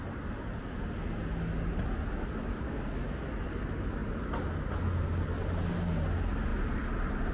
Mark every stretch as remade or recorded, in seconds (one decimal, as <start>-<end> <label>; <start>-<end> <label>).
0.0-2.4 recorded; 2.4-3.3 remade; 3.3-7.3 recorded